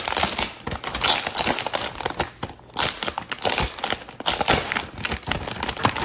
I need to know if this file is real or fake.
real